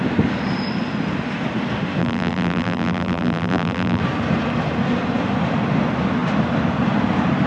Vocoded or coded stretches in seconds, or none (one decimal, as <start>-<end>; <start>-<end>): 2.0-4.0